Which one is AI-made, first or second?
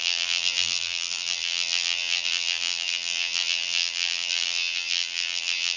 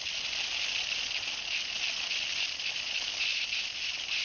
first